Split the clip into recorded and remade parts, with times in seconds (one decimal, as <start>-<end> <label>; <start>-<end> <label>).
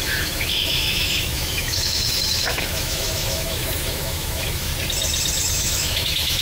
0.0-4.7 remade; 4.7-5.5 recorded; 5.5-6.4 remade